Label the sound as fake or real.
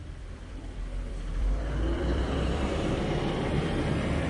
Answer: fake